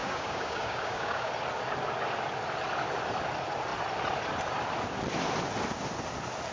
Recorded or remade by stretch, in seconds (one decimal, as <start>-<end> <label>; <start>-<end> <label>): 0.0-1.3 remade; 1.3-6.5 recorded